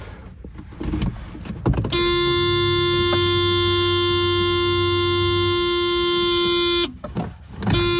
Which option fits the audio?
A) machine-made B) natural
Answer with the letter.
B